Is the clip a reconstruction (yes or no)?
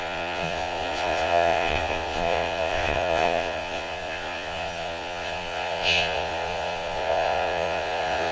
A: yes